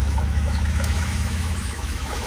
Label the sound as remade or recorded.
remade